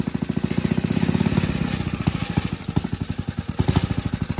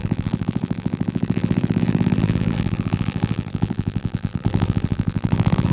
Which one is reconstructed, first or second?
second